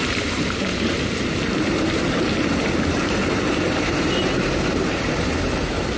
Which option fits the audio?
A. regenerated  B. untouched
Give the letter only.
A